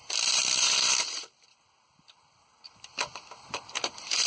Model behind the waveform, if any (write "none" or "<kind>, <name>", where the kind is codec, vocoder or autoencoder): vocoder, BigVGAN v2